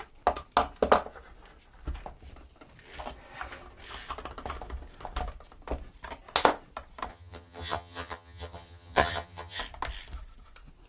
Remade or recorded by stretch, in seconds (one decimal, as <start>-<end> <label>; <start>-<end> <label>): 0.0-7.1 recorded; 7.1-9.6 remade; 9.6-10.9 recorded